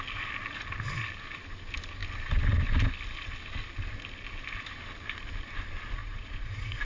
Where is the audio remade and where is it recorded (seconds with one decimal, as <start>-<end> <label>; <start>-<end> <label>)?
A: 0.0-6.0 recorded; 6.0-6.8 remade